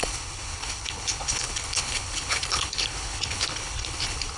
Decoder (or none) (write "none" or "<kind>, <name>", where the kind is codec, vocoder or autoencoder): codec, HILCodec